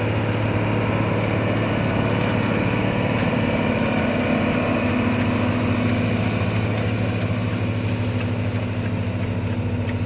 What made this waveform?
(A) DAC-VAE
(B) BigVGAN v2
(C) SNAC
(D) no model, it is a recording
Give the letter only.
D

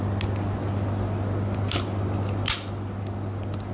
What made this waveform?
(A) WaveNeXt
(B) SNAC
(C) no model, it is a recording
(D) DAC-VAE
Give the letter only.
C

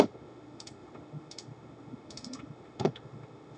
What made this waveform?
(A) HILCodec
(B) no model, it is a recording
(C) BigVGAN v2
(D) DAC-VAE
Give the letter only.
D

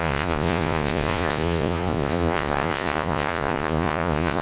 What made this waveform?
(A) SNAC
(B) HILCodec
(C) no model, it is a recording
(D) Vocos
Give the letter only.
D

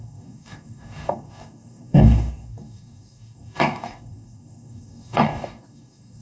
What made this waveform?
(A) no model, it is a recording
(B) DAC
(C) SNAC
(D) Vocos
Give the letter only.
B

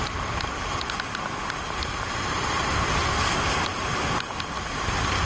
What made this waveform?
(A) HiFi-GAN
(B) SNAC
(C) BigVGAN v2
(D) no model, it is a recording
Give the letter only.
D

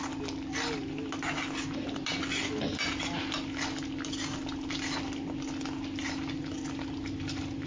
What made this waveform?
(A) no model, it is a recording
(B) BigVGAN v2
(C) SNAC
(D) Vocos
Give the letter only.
A